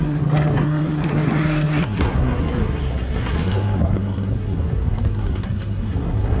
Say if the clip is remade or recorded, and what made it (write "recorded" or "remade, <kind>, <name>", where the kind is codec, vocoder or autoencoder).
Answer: remade, codec, SNAC